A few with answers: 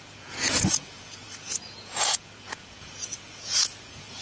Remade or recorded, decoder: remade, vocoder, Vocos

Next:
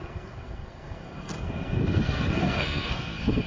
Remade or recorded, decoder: remade, codec, SNAC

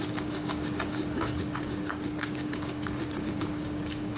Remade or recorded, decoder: remade, codec, DAC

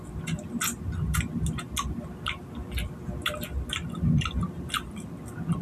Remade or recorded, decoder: recorded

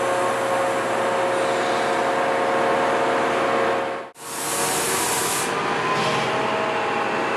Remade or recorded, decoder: recorded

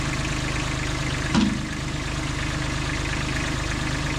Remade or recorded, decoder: recorded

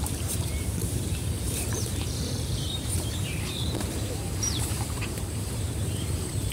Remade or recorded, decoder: remade, vocoder, BigVGAN v2